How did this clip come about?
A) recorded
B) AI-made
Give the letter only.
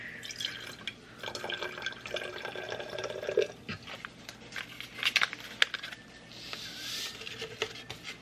A